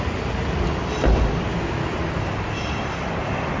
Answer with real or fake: real